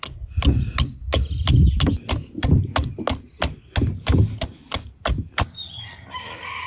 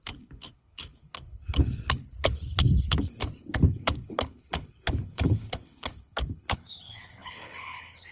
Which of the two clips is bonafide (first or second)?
first